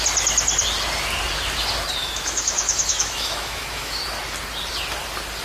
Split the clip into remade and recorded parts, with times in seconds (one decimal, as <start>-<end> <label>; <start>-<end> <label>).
0.0-2.0 recorded; 2.0-4.0 remade; 4.0-5.4 recorded